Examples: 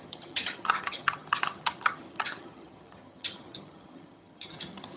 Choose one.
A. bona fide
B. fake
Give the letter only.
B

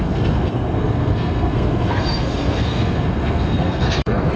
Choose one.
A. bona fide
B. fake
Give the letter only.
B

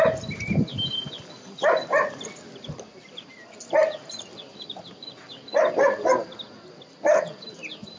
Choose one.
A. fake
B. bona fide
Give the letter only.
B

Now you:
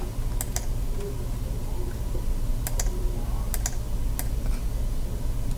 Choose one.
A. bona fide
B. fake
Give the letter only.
A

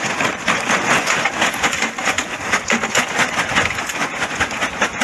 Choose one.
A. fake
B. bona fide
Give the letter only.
A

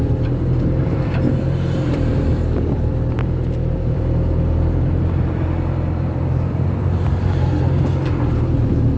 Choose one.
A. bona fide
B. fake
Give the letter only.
B